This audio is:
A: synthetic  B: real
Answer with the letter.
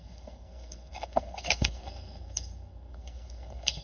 A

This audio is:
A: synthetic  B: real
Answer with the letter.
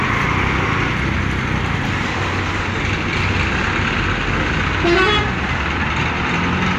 B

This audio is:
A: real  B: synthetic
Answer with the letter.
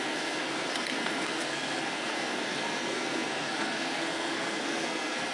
B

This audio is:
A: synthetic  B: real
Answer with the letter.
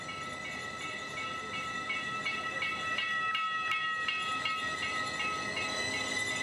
B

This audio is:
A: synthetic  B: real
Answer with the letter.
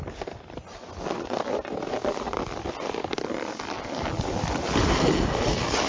B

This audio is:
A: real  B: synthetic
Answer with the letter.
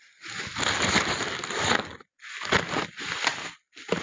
A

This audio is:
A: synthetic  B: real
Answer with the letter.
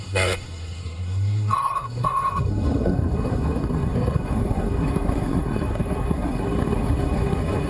A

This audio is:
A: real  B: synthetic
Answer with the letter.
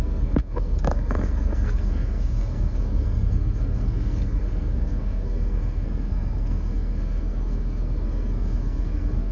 B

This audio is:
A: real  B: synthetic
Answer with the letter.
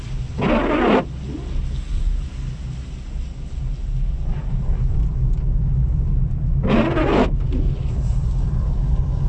A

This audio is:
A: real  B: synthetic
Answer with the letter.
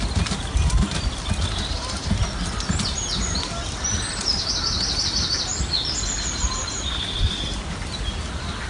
A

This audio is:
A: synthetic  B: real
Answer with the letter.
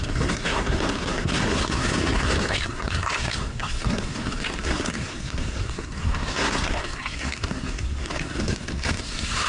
A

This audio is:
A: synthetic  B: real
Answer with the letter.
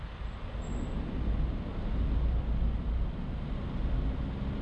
B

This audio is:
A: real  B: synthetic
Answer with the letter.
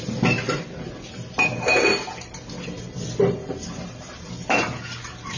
A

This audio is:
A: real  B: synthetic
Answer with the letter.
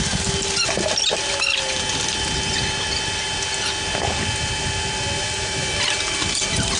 A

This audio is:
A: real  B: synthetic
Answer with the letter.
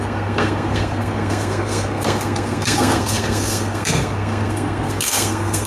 B